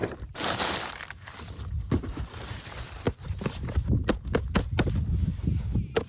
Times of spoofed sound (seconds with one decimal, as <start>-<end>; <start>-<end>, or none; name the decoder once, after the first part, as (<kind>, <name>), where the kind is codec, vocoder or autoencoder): none